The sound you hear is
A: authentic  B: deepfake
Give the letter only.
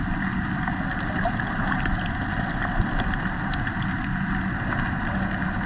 A